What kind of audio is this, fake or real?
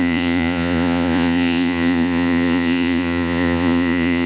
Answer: fake